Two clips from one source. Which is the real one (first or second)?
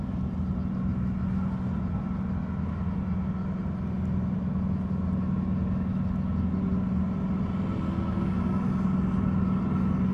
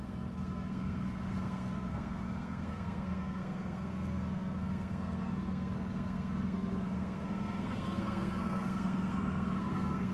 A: first